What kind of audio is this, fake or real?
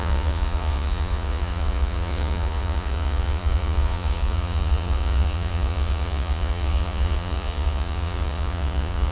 fake